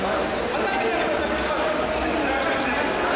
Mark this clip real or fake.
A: real